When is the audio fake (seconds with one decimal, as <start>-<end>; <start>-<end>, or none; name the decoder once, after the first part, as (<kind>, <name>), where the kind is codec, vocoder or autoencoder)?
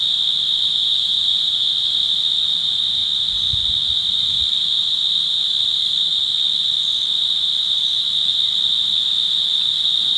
0.7-1.7 (vocoder, Vocos)